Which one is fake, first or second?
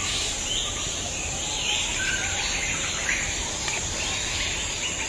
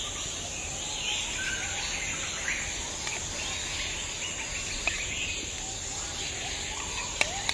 first